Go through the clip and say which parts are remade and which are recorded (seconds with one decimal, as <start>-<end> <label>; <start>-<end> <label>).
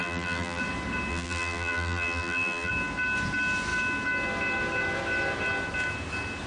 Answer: 0.0-0.6 remade; 0.6-1.1 recorded; 1.1-2.7 remade; 2.7-6.5 recorded